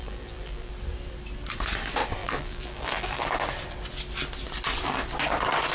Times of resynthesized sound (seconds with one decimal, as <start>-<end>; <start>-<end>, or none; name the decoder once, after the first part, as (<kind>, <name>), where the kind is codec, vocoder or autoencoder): 0.0-0.7 (vocoder, BigVGAN v2); 2.2-3.2